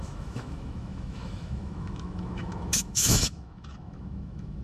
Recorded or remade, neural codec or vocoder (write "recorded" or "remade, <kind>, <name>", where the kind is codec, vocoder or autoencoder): remade, autoencoder, DAC-VAE